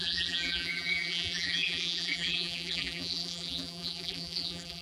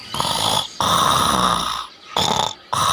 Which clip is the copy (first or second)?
first